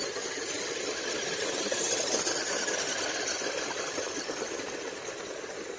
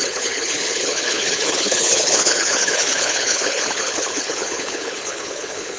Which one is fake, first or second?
second